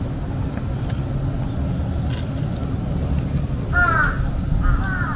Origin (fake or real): real